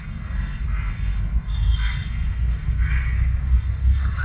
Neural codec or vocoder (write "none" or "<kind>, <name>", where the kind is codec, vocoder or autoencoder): codec, SNAC